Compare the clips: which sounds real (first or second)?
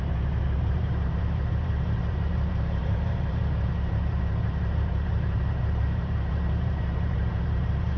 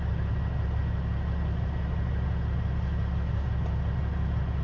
second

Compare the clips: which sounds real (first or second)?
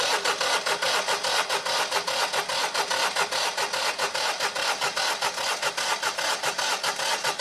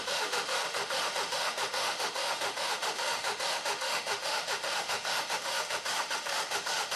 first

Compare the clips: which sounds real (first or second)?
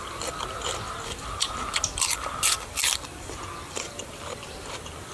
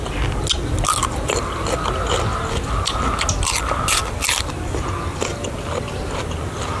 second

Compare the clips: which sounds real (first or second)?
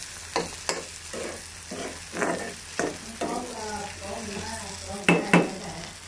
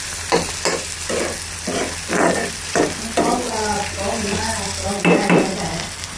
first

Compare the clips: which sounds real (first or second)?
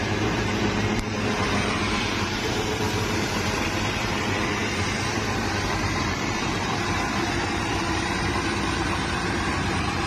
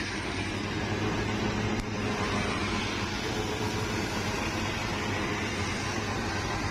second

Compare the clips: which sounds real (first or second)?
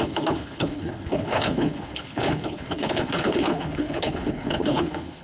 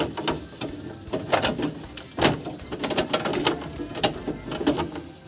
second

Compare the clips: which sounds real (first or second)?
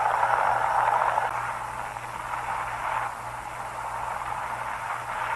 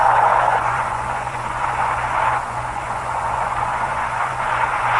first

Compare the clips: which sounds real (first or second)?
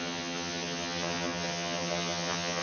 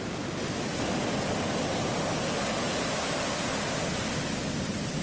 second